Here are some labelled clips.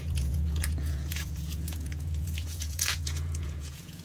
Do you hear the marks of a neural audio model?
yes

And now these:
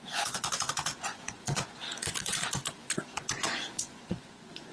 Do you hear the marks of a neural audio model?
yes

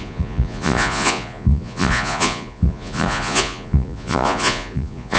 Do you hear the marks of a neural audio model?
yes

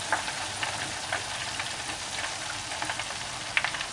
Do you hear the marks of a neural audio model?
no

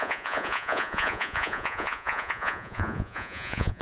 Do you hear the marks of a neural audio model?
yes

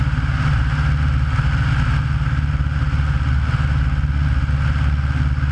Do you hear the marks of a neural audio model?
no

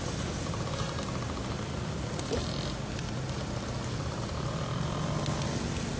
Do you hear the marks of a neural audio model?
no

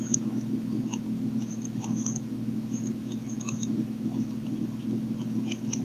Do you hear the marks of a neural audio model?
yes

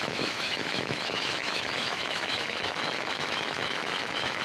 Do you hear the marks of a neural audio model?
yes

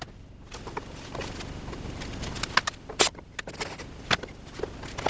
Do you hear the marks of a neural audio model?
no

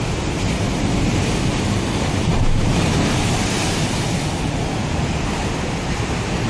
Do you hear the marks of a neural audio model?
no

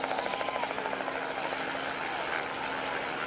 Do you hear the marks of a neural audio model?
no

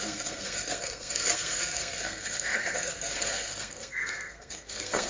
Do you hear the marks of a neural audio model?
yes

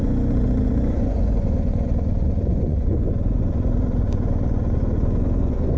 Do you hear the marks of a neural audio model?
yes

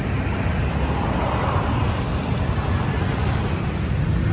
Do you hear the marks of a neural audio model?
no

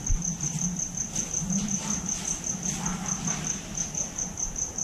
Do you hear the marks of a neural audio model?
yes